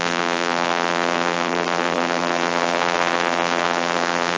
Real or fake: fake